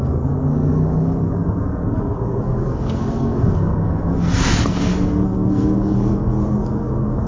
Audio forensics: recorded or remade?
remade